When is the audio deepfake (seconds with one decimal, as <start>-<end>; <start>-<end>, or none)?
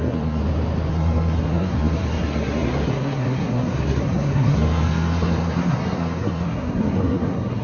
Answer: 0.0-0.4; 0.9-7.6